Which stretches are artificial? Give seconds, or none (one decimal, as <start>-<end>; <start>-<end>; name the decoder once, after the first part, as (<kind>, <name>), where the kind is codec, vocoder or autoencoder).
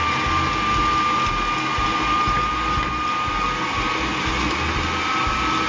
none